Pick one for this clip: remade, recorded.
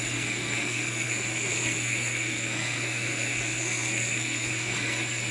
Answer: remade